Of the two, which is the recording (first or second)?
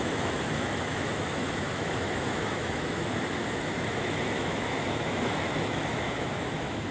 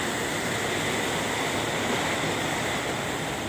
second